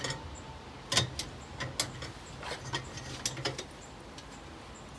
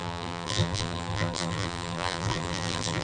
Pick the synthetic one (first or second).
second